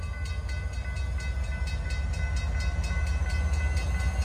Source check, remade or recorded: recorded